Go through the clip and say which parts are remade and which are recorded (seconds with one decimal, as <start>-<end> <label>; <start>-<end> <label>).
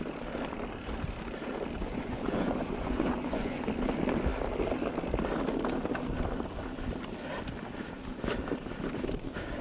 0.0-1.8 recorded; 1.8-3.7 remade; 3.7-9.6 recorded